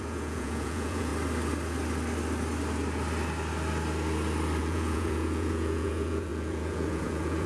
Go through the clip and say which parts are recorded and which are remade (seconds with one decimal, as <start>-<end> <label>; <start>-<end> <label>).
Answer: 0.0-1.1 remade; 1.1-4.6 recorded; 4.6-7.5 remade